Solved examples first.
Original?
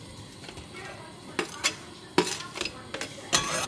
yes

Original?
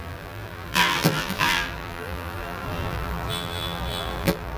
no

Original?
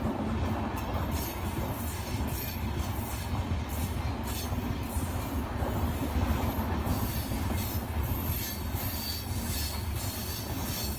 yes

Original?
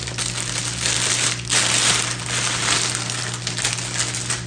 yes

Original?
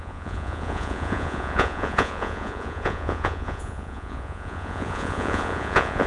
no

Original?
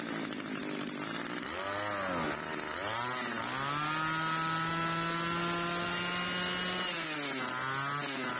yes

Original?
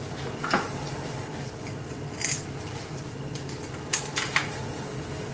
yes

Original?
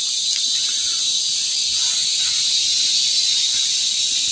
yes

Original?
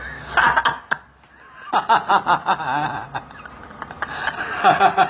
yes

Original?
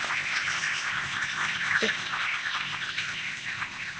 no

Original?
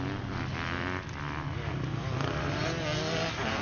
yes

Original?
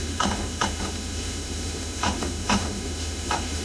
no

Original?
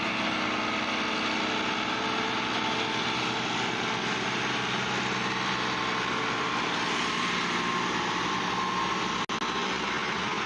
yes